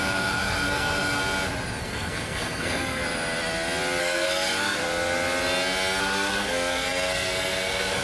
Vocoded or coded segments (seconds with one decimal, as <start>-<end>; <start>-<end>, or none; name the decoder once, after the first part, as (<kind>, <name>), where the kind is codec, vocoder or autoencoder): 0.0-1.2 (codec, SNAC); 1.8-3.0; 4.0-4.8; 6.0-8.0